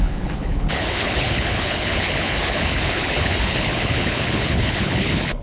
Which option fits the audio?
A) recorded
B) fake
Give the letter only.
B